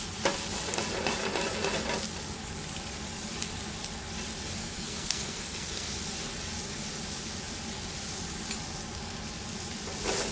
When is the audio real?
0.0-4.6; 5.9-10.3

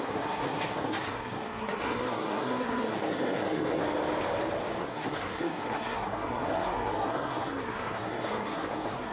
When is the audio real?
3.8-4.8

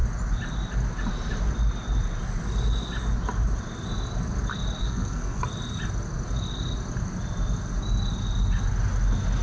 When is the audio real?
0.0-4.8; 5.4-9.4